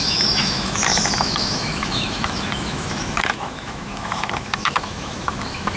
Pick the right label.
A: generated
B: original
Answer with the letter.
A